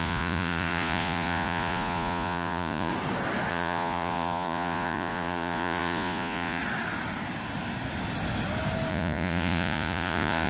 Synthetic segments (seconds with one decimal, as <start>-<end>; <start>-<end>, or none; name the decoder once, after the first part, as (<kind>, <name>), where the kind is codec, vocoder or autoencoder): 0.0-2.9 (vocoder, Vocos); 3.5-6.6; 8.9-10.5

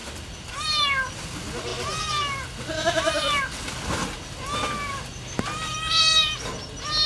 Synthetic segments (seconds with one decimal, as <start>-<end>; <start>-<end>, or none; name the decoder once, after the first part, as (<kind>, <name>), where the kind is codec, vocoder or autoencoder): none

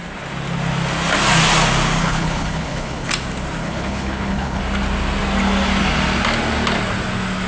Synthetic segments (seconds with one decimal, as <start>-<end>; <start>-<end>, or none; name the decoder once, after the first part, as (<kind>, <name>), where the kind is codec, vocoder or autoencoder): 2.0-3.1 (codec, HILCodec); 3.6-4.6

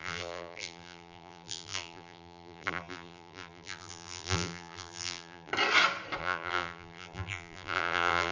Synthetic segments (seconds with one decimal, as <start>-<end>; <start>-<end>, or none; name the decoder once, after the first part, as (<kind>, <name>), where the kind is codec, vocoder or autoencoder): 0.0-5.5 (vocoder, BigVGAN v2); 6.2-8.3